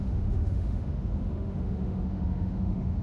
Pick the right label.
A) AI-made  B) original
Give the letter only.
A